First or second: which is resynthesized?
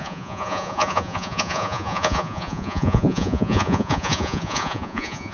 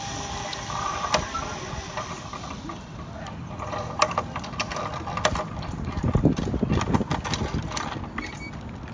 first